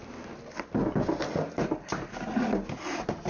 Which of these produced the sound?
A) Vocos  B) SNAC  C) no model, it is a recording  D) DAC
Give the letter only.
C